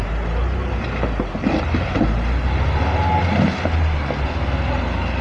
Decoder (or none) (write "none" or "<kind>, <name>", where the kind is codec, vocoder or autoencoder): none